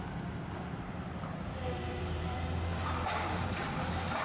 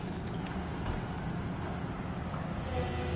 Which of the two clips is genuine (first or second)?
second